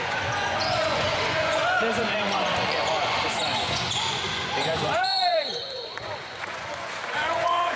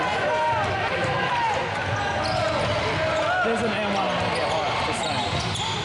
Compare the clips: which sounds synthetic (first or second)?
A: first